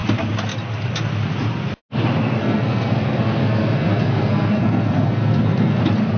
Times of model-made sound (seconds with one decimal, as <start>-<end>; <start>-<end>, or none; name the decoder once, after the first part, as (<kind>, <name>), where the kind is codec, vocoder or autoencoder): 2.4-5.8 (codec, SNAC)